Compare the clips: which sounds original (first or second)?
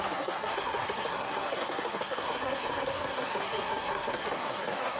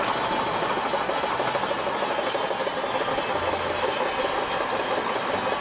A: second